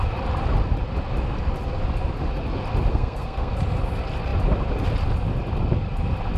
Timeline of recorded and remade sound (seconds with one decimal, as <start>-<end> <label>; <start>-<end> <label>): 0.0-2.9 recorded; 2.9-3.5 remade; 3.5-6.4 recorded